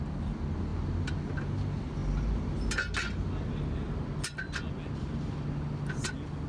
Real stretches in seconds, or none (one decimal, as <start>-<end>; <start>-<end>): 0.0-6.5